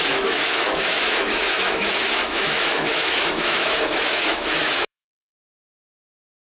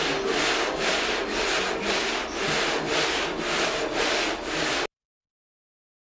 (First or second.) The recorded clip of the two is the second